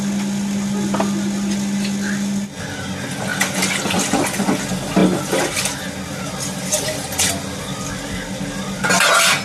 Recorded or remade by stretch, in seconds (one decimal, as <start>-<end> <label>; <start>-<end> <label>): 0.0-9.4 recorded